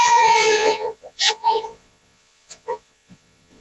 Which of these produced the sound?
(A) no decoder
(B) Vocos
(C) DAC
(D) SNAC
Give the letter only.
B